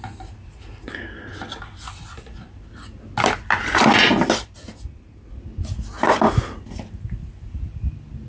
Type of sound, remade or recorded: recorded